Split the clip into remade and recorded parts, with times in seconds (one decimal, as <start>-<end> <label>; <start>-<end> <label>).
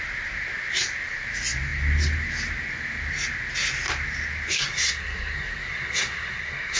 0.0-4.5 recorded; 4.5-6.8 remade